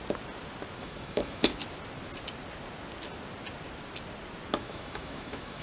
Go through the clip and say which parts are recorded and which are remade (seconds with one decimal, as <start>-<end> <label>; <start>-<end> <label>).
0.0-0.8 recorded; 0.8-1.5 remade; 1.5-4.6 recorded; 4.6-5.6 remade